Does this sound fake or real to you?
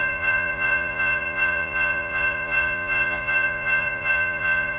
fake